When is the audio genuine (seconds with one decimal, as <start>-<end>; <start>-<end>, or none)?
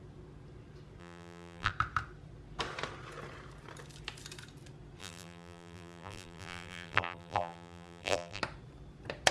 0.0-1.0; 1.7-5.0; 8.4-9.3